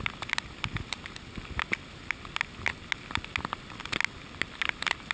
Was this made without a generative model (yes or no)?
yes